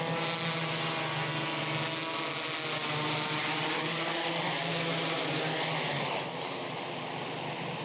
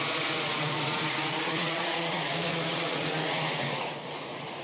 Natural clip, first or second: first